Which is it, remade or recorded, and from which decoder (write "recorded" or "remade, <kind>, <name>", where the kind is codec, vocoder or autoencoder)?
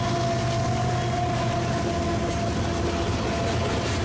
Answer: recorded